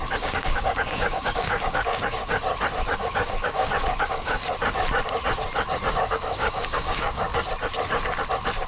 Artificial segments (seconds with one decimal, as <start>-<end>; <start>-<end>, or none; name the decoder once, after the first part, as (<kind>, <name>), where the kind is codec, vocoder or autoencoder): 0.0-2.2 (codec, DAC); 3.0-4.4; 5.9-7.3